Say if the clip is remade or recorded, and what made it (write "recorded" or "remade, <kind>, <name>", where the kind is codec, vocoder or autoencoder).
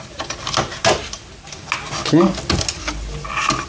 recorded